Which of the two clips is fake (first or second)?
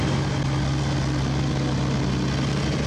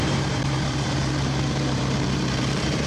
second